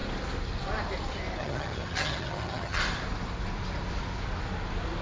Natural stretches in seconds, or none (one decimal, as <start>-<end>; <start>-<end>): 0.0-1.4; 2.8-5.0